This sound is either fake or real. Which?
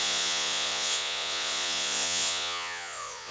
fake